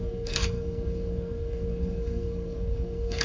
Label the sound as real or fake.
fake